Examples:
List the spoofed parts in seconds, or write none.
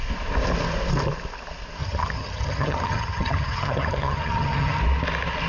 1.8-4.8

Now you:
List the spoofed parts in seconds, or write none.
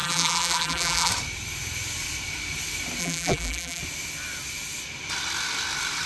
0.0-1.1; 3.0-3.8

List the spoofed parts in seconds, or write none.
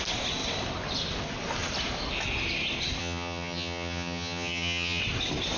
3.0-5.0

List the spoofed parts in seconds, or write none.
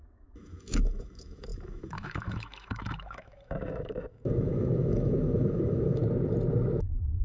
0.0-6.0; 6.8-7.2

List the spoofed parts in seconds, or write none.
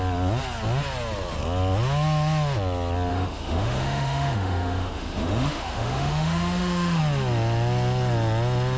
3.1-7.0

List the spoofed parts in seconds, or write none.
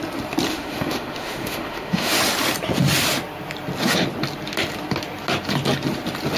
0.5-2.2